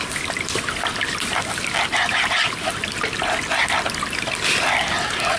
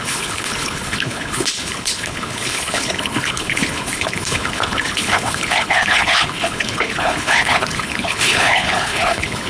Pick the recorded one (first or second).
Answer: first